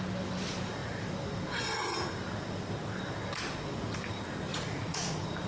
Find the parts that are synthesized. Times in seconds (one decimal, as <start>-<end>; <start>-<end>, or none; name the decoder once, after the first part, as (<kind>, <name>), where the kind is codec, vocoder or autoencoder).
4.5-5.1 (vocoder, Vocos)